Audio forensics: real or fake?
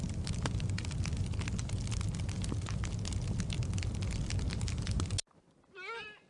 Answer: real